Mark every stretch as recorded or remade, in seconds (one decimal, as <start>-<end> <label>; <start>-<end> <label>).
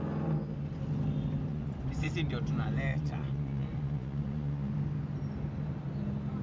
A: 0.0-1.5 recorded; 1.5-2.1 remade; 2.1-2.9 recorded; 2.9-4.7 remade; 4.7-6.4 recorded